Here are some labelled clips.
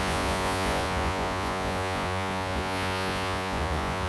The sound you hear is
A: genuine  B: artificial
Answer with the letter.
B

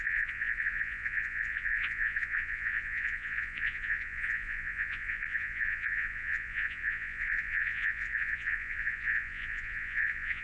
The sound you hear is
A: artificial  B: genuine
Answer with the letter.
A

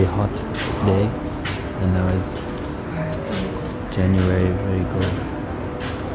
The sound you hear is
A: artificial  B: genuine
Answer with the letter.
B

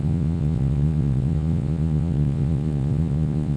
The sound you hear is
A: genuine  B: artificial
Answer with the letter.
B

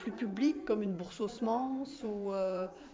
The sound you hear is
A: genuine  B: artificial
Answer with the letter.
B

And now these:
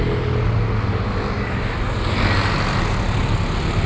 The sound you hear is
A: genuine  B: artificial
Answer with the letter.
A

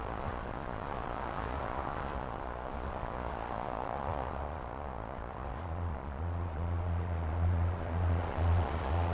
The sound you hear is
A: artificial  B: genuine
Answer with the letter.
A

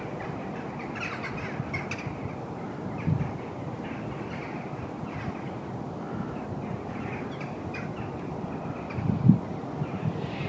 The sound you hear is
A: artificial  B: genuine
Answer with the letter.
B